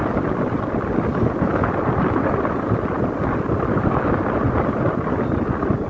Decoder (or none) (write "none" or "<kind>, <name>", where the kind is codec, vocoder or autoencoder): none